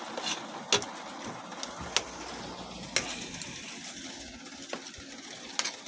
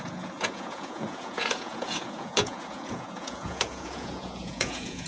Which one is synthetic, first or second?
second